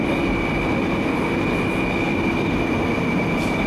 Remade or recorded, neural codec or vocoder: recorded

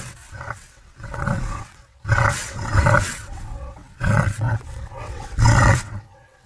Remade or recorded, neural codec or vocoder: remade, vocoder, WaveNeXt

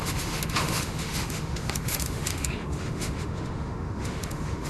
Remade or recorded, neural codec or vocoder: remade, autoencoder, DAC-VAE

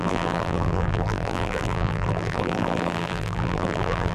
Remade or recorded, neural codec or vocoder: remade, vocoder, BigVGAN v2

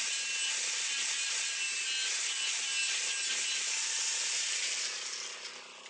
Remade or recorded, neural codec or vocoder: recorded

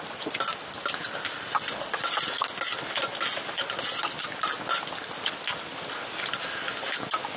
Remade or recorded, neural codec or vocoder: recorded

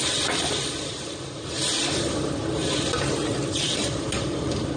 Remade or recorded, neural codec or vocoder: recorded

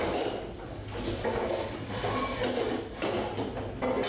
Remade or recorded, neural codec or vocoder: recorded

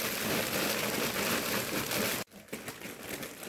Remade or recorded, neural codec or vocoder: recorded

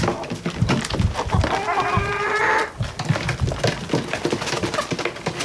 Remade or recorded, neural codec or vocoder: recorded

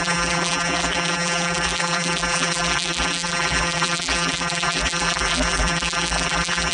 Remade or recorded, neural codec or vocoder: remade, vocoder, BigVGAN v2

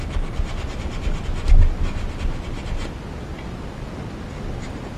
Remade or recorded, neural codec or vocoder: recorded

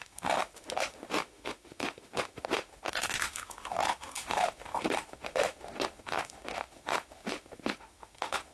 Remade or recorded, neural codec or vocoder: remade, autoencoder, DAC-VAE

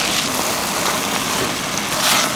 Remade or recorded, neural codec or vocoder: recorded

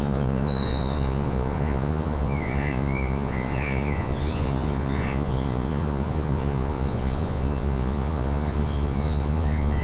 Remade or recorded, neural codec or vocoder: remade, vocoder, Vocos